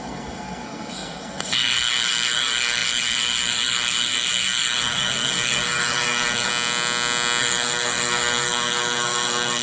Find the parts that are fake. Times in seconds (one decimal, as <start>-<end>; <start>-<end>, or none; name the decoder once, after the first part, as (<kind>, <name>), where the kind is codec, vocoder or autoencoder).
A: 0.0-6.5 (codec, SNAC); 7.4-9.6